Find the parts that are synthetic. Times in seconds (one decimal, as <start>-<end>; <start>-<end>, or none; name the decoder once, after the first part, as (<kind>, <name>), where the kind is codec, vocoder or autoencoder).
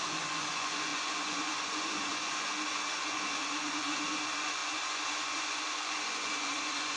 0.0-7.0 (vocoder, Vocos)